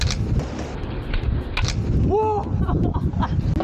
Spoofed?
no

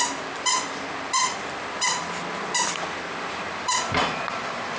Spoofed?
yes